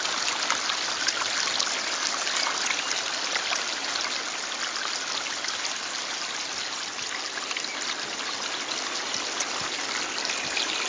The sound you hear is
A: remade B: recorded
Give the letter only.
B